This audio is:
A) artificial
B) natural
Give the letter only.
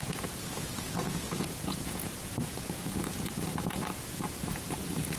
A